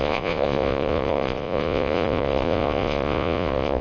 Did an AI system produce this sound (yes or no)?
yes